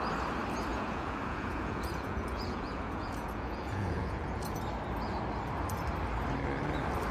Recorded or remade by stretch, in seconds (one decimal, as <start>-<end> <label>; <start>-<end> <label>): 0.0-0.7 recorded; 0.7-4.6 remade; 4.6-7.1 recorded